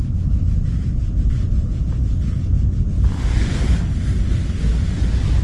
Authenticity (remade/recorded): recorded